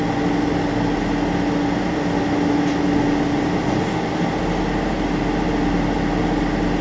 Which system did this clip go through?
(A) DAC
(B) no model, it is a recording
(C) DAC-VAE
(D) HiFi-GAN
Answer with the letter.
B